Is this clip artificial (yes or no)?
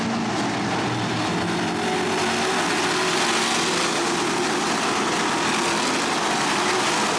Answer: no